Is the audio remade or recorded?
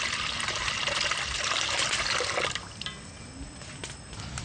recorded